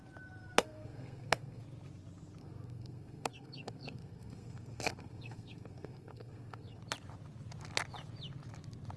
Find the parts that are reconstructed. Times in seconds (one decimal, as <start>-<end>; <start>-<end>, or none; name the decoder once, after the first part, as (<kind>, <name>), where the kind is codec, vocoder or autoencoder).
0.6-1.6 (codec, SNAC); 2.4-6.8